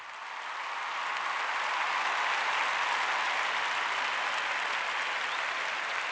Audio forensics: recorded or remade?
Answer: recorded